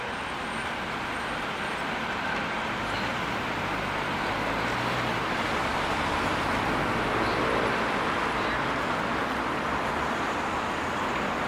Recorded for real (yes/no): yes